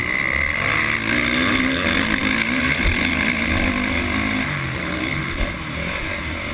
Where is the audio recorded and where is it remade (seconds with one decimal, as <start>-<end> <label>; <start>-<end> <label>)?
0.0-6.5 recorded